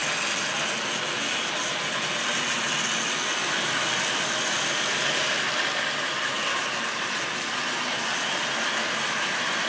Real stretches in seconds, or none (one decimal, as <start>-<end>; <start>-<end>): 0.0-9.7